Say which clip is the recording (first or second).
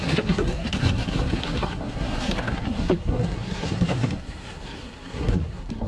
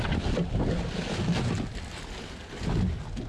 second